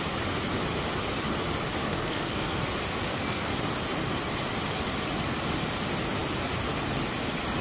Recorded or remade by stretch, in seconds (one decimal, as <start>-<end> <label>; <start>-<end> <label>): 0.0-1.8 recorded; 1.8-2.6 remade; 2.6-3.1 recorded; 3.1-3.6 remade; 3.6-7.6 recorded